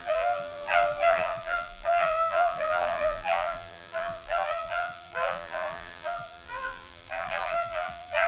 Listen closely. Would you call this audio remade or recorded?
remade